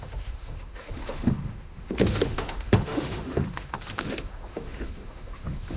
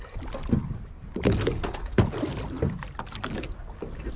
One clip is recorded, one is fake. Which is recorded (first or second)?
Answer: second